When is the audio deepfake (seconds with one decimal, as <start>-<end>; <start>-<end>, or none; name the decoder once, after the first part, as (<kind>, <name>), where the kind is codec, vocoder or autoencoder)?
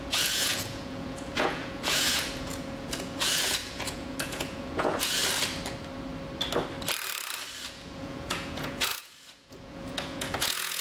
0.0-5.2 (vocoder, Vocos); 7.7-10.8